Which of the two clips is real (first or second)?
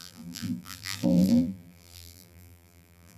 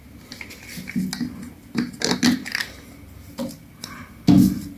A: second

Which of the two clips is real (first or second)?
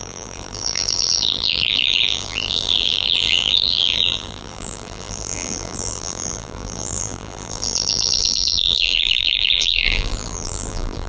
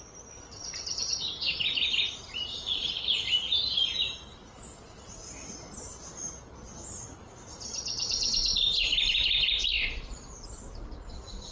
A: second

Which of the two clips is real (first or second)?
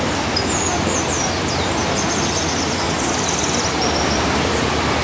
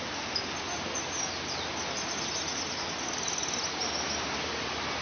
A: second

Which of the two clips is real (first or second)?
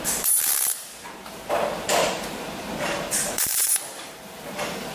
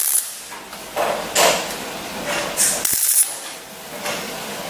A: second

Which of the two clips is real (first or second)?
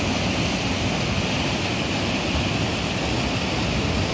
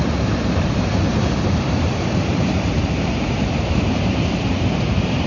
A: first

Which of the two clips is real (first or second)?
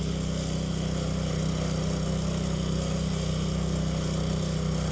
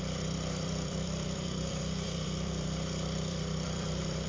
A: first